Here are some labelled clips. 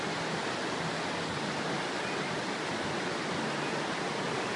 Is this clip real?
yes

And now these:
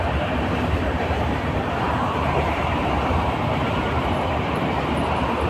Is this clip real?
no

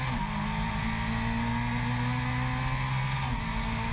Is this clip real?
yes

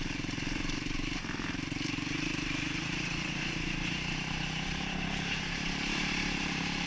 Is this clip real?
no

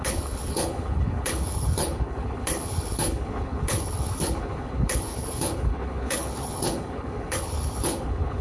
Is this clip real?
no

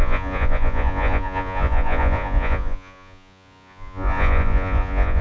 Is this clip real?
no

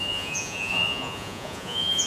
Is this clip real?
no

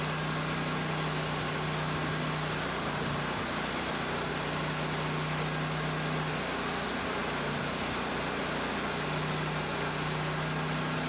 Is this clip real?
yes